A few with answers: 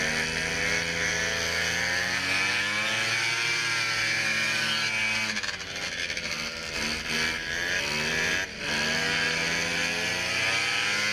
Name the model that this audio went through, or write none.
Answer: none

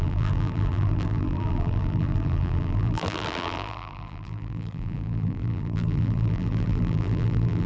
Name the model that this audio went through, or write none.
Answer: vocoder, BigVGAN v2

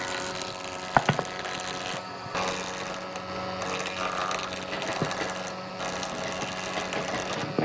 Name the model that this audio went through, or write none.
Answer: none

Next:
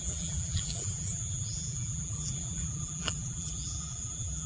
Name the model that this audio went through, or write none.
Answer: vocoder, BigVGAN v2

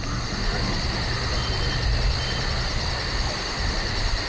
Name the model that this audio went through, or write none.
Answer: none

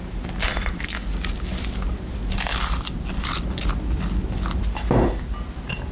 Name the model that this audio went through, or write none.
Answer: none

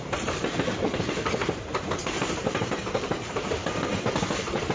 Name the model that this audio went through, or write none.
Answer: vocoder, BigVGAN v2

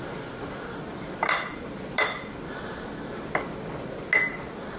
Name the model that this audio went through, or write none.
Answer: none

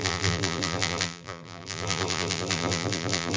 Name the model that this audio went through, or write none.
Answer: vocoder, BigVGAN v2